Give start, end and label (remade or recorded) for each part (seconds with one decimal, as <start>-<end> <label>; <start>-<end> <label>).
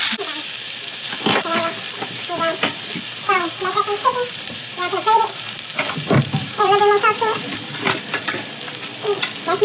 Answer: 0.0-2.0 recorded; 2.0-5.4 remade; 5.4-6.4 recorded; 6.4-8.6 remade; 8.6-9.6 recorded